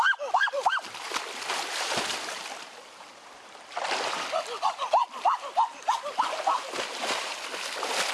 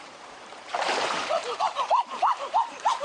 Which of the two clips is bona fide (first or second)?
first